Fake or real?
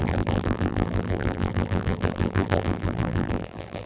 fake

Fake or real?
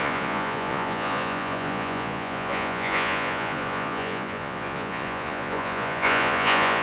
fake